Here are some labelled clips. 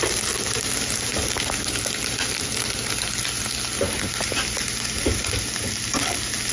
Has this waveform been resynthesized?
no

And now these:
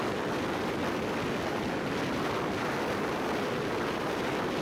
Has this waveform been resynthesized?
no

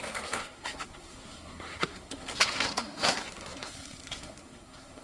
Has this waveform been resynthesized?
yes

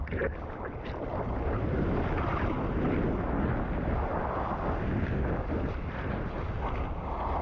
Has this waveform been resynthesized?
no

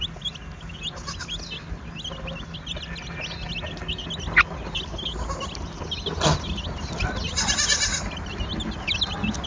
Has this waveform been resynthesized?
no